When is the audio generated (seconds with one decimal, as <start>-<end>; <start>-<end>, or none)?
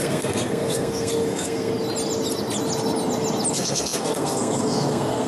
0.0-1.7; 3.5-5.3